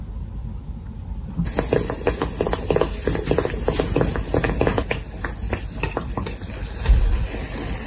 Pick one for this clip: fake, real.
real